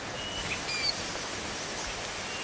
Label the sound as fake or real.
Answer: real